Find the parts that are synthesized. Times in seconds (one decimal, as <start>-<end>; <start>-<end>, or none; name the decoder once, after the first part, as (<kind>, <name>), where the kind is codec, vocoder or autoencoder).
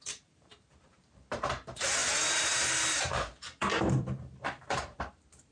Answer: 0.0-5.5 (vocoder, BigVGAN v2)